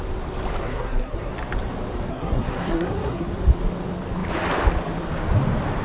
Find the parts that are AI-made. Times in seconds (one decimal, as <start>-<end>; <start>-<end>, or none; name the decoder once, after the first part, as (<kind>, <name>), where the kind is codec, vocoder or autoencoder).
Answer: 0.6-1.3 (codec, SNAC); 2.1-3.3